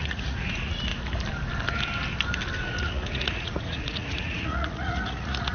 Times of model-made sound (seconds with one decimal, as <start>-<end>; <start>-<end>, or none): 0.0-0.9; 2.6-5.5